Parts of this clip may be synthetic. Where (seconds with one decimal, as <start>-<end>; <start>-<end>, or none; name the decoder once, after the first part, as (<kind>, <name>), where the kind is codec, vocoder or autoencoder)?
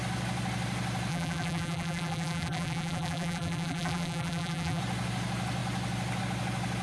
1.1-4.8 (vocoder, BigVGAN v2)